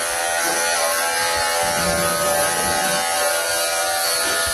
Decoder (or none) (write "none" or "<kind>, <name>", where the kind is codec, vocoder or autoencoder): none